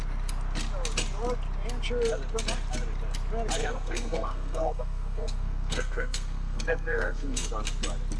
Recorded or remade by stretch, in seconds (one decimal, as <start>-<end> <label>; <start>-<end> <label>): 0.0-3.6 recorded; 3.6-7.5 remade; 7.5-8.2 recorded

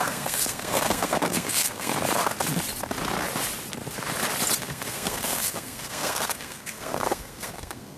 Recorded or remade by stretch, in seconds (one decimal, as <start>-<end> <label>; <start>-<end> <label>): 0.0-1.9 remade; 1.9-4.6 recorded; 4.6-8.0 remade

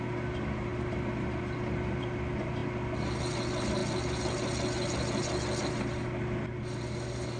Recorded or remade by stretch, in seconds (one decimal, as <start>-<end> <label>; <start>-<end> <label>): 0.0-7.4 recorded

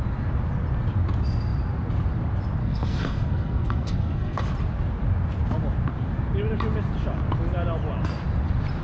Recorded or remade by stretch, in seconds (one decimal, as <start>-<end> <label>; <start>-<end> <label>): 0.0-2.6 recorded; 2.6-4.4 remade; 4.4-8.8 recorded

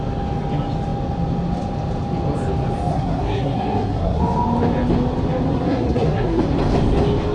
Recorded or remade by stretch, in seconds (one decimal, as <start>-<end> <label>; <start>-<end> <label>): 0.0-2.9 recorded; 2.9-4.2 remade; 4.2-5.5 recorded; 5.5-6.4 remade; 6.4-7.3 recorded

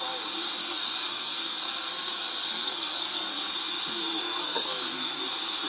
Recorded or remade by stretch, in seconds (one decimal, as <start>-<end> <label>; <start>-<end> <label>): 0.0-0.6 recorded; 0.6-3.5 remade; 3.5-4.2 recorded; 4.2-5.2 remade; 5.2-5.7 recorded

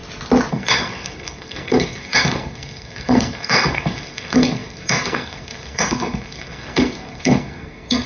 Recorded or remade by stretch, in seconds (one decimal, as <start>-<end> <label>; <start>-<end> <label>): 0.0-0.5 recorded; 0.5-8.1 remade